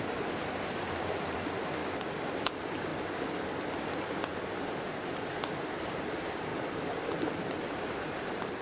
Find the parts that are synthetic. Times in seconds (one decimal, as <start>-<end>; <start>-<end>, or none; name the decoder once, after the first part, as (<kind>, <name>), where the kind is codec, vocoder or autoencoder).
0.0-1.8 (vocoder, BigVGAN v2); 2.5-2.9; 5.7-6.5; 7.4-8.6